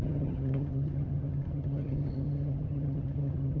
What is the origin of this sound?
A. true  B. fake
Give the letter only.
B